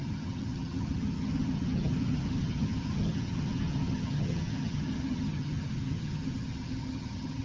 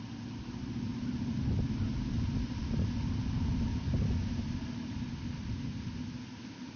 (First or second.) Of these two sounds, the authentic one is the second